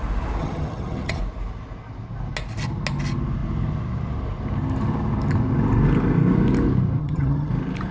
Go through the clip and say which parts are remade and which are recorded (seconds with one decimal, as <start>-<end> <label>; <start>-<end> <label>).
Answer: 0.0-0.4 recorded; 0.4-1.2 remade; 1.2-7.0 recorded; 7.0-7.5 remade; 7.5-7.9 recorded

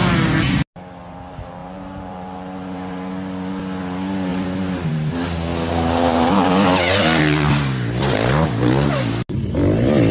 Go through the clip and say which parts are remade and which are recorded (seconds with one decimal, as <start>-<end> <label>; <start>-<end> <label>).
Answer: 0.0-0.6 remade; 0.6-1.6 recorded; 1.6-3.1 remade; 3.1-4.3 recorded; 4.3-4.9 remade; 4.9-5.5 recorded; 5.5-6.5 remade; 6.5-10.1 recorded

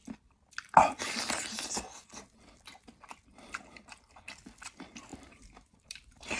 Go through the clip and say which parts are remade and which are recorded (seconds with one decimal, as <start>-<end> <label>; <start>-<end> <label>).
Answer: 0.0-5.1 recorded; 5.1-6.4 remade

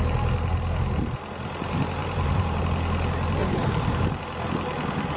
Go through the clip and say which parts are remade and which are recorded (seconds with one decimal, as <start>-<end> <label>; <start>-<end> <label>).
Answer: 0.0-2.0 recorded; 2.0-2.6 remade; 2.6-3.4 recorded; 3.4-4.2 remade; 4.2-5.2 recorded